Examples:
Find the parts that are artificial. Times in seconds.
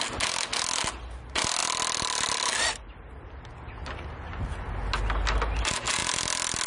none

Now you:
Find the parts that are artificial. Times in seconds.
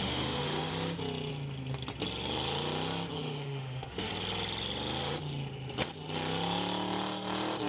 0.0-0.7 (autoencoder, DAC-VAE); 3.1-4.1